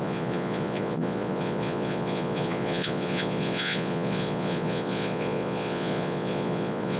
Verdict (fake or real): fake